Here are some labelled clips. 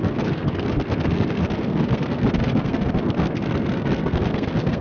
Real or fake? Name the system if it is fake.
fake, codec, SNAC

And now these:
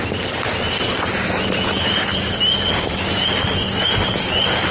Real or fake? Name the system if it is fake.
real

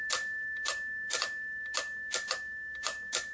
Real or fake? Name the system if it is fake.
real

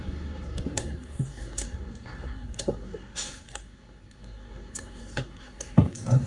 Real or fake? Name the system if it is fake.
fake, codec, SNAC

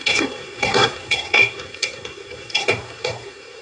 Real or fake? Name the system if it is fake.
fake, codec, SNAC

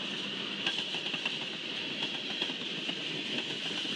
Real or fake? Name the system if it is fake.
real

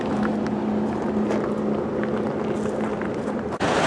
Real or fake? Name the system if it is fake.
real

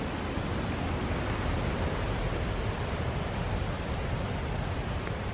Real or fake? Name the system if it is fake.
real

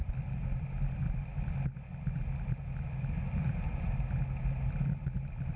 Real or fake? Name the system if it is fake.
real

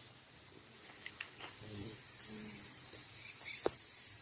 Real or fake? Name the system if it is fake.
real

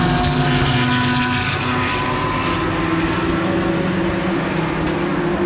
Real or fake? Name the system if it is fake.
real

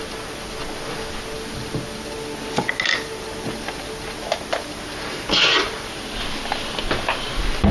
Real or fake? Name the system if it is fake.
real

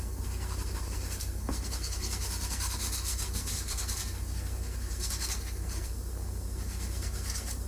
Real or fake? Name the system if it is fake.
fake, codec, SNAC